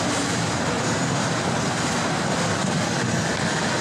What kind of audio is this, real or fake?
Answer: real